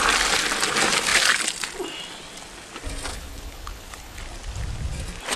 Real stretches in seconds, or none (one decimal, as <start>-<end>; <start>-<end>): 0.0-3.1; 4.2-5.4

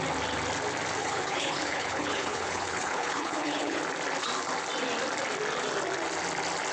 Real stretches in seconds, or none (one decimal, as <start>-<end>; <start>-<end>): 0.0-1.0; 3.8-6.7

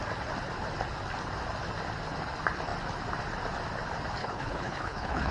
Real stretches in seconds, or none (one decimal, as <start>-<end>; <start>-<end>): 0.0-4.2

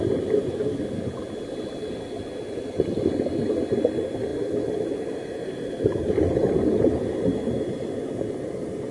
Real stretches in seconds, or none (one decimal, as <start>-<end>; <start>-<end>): 0.0-8.9

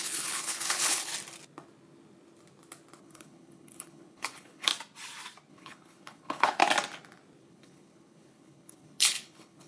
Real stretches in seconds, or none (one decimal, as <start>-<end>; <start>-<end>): 1.1-3.0; 4.7-5.5; 6.6-7.4